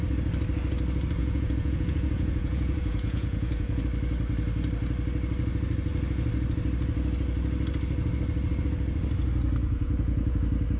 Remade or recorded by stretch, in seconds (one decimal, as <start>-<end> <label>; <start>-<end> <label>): 0.0-1.2 recorded; 1.2-3.8 remade; 3.8-9.6 recorded; 9.6-10.4 remade; 10.4-10.8 recorded